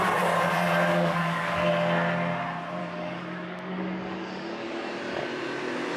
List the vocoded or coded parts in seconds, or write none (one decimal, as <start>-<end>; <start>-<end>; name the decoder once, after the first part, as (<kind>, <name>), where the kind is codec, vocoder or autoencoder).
0.9-1.7 (codec, DAC); 2.8-5.0